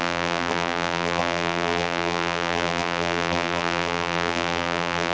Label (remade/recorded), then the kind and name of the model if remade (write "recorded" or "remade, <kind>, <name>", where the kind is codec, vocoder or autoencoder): remade, vocoder, BigVGAN v2